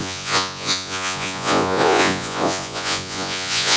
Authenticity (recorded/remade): remade